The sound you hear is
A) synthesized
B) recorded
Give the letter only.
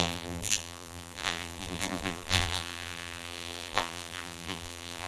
A